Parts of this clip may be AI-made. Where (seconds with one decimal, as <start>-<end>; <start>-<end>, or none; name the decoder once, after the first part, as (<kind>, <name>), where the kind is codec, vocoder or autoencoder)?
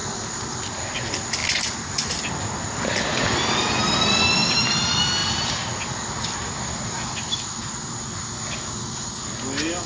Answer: 0.0-0.6 (vocoder, BigVGAN v2); 1.4-2.3